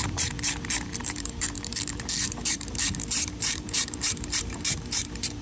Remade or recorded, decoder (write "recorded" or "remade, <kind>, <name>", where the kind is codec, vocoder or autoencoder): remade, vocoder, BigVGAN v2